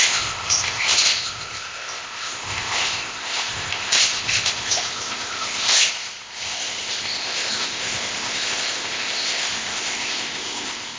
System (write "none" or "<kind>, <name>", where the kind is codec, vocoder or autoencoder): codec, ZipCodec